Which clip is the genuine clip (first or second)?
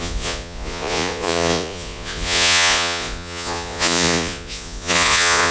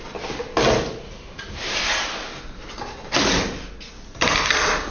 second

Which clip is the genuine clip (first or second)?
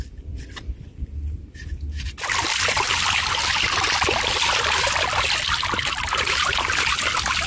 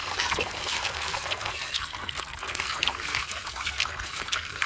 first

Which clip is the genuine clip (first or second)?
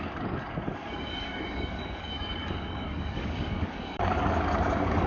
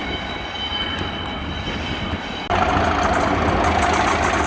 second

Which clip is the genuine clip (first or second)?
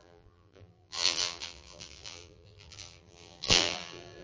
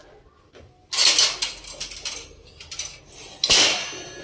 second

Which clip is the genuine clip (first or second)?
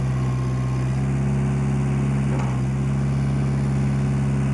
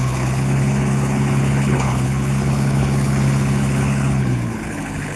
first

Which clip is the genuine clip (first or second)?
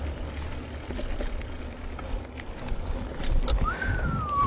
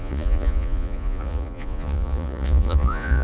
first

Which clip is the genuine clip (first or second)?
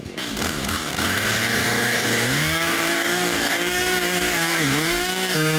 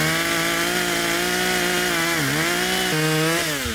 second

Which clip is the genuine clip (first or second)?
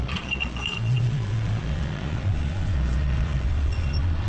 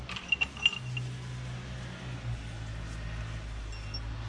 second